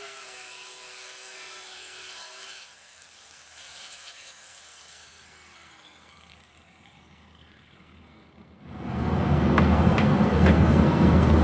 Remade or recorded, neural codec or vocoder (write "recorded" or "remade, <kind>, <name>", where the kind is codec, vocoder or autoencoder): remade, codec, SNAC